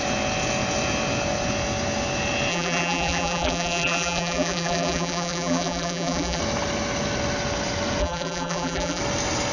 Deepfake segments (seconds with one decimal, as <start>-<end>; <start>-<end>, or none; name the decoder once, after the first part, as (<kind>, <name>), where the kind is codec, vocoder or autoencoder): 2.5-6.4 (vocoder, BigVGAN v2); 8.0-9.0